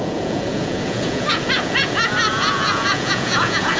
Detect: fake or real fake